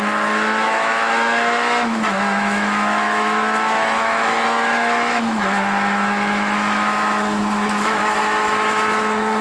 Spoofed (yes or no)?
yes